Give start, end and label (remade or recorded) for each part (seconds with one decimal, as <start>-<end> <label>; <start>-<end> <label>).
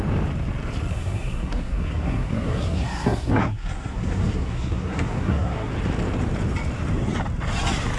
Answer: 0.0-0.9 recorded; 0.9-5.7 remade; 5.7-8.0 recorded